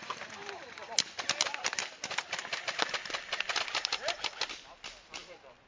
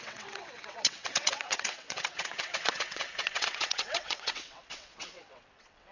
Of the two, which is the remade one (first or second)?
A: second